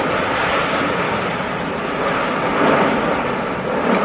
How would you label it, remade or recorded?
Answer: recorded